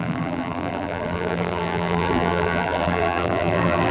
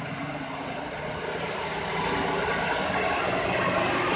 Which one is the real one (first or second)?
second